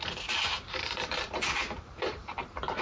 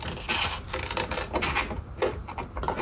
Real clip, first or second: second